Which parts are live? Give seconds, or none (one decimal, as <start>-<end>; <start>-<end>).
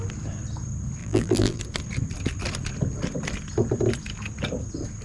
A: 0.0-1.0; 1.6-5.0